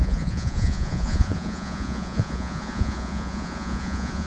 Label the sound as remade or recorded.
remade